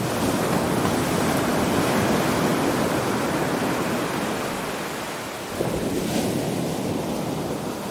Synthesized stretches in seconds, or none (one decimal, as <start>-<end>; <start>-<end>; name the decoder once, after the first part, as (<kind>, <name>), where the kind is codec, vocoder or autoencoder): none